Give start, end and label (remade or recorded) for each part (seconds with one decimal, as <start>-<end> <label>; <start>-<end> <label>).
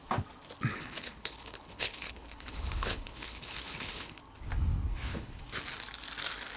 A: 0.0-0.7 recorded; 0.7-4.2 remade; 4.2-4.9 recorded; 4.9-5.4 remade; 5.4-6.6 recorded